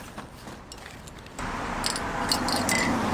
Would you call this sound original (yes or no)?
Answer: yes